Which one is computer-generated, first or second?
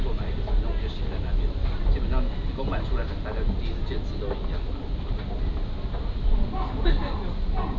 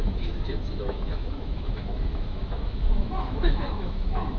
second